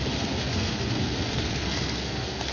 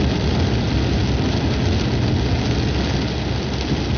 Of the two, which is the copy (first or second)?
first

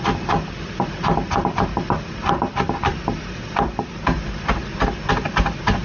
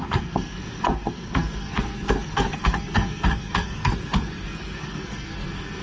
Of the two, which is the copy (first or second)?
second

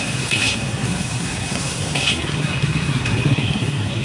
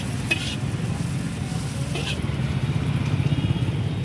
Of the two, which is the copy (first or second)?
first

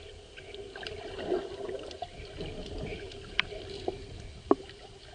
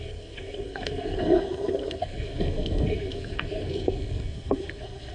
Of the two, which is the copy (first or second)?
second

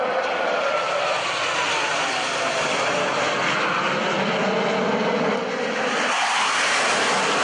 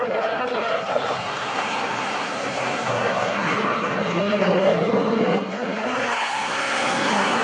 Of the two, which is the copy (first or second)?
second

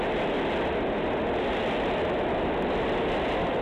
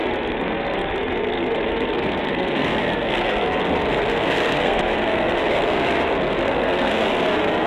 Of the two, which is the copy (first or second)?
second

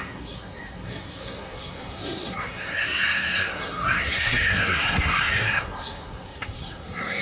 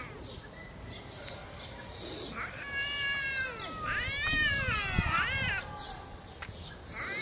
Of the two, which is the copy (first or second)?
first